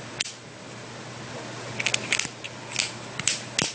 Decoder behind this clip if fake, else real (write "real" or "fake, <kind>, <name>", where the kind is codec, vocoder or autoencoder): real